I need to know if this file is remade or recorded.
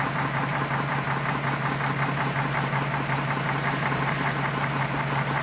recorded